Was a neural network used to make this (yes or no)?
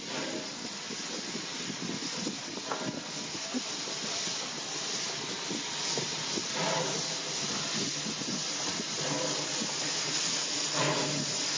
no